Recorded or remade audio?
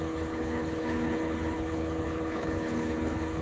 remade